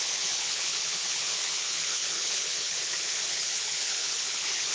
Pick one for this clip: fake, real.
fake